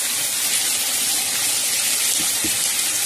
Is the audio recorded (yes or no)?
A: yes